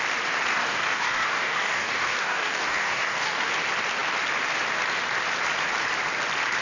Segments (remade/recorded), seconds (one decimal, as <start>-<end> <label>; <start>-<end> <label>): 0.0-0.5 recorded; 0.5-3.5 remade; 3.5-6.6 recorded